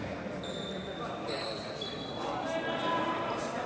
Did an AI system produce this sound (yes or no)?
no